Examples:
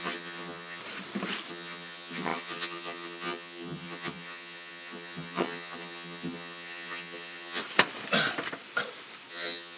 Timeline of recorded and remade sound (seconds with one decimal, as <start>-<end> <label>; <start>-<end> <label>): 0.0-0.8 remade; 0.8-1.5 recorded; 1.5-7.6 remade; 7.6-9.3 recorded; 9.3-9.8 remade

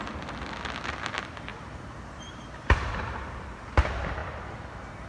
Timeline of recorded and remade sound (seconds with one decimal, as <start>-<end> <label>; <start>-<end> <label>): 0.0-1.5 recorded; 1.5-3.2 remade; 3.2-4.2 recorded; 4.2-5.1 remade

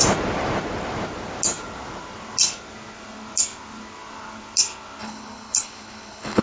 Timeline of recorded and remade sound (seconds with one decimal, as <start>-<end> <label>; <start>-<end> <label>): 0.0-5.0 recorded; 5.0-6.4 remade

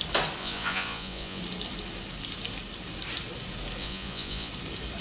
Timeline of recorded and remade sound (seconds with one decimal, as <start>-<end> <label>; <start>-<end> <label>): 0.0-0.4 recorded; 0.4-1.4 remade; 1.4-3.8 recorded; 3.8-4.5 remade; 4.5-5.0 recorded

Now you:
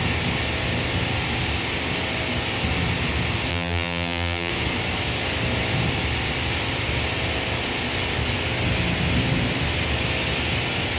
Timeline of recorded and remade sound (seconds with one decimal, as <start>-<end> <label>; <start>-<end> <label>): 0.0-3.5 recorded; 3.5-4.5 remade; 4.5-11.0 recorded

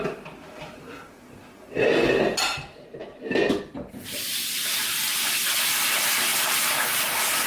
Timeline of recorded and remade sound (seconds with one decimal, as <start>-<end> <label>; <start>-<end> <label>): 0.0-7.5 recorded

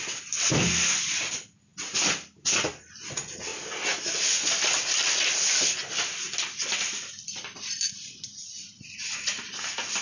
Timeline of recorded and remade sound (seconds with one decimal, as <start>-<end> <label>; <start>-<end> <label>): 0.0-10.0 recorded